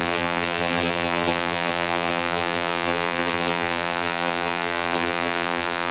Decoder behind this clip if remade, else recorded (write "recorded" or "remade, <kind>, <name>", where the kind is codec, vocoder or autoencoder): remade, vocoder, BigVGAN v2